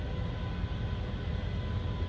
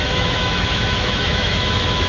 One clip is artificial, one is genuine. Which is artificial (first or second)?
second